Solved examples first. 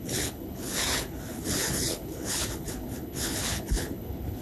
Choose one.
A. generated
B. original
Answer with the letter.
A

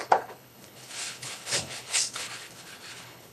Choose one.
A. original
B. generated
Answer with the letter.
B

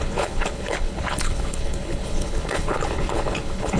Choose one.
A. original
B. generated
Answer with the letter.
B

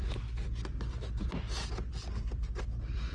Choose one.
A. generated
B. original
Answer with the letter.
B